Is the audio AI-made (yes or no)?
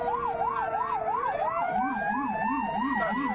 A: no